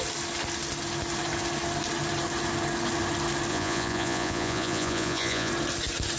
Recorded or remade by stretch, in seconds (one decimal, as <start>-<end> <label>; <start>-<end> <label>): 0.0-3.5 recorded; 3.5-5.5 remade; 5.5-6.2 recorded